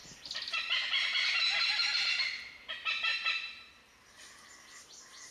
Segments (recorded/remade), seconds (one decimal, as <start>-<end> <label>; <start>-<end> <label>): 0.0-5.3 recorded